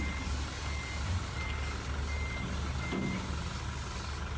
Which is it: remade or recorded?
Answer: recorded